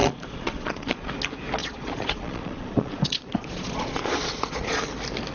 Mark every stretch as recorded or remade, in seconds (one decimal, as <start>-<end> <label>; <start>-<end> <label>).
0.0-1.1 remade; 1.1-1.6 recorded; 1.6-4.8 remade; 4.8-5.3 recorded